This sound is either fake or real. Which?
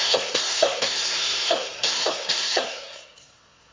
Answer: fake